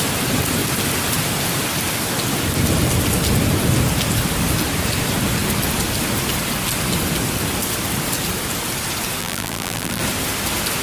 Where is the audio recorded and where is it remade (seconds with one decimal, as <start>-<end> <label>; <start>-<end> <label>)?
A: 0.0-9.2 recorded; 9.2-10.0 remade; 10.0-10.8 recorded